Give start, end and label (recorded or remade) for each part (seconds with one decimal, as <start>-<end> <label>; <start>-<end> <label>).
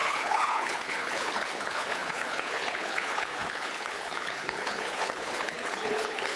0.0-6.4 remade